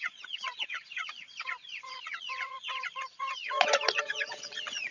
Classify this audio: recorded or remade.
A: remade